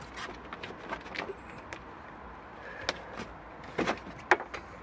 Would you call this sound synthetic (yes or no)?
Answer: no